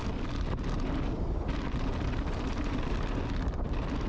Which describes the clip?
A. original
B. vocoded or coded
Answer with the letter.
A